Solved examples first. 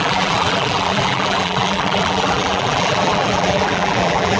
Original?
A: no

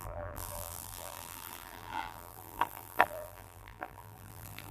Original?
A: no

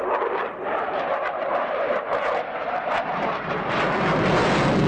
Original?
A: yes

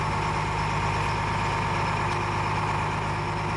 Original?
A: yes